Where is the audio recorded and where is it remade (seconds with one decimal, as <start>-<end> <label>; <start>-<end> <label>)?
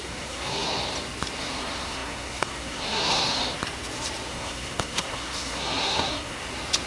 0.0-0.8 remade; 0.8-1.4 recorded; 1.4-3.4 remade; 3.4-4.3 recorded; 4.3-6.4 remade; 6.4-6.9 recorded